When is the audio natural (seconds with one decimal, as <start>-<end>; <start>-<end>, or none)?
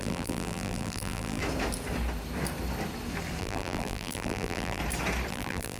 1.4-3.4; 4.8-5.3